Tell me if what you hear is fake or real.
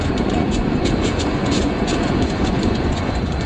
fake